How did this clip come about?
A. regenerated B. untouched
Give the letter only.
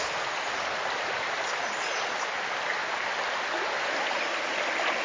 B